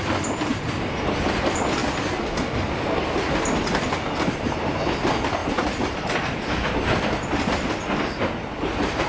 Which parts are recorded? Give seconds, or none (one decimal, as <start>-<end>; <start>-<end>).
0.0-9.1